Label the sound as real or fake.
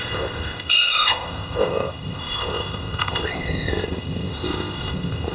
fake